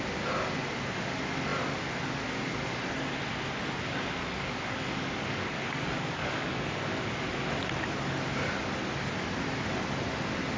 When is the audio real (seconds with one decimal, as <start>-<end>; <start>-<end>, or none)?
0.0-4.2; 7.0-10.6